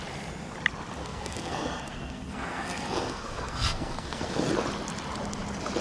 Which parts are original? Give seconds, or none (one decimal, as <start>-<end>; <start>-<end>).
0.0-1.0; 4.5-5.8